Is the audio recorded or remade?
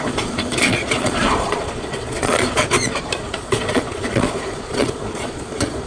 remade